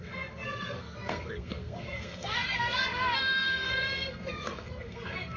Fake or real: fake